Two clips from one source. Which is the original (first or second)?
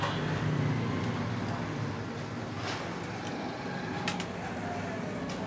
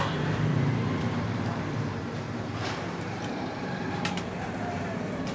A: first